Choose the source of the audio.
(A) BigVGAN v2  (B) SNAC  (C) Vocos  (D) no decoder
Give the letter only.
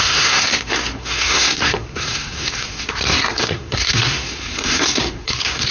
B